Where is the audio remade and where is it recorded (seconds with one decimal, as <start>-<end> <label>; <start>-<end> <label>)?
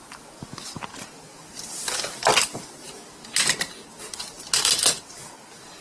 0.0-5.8 recorded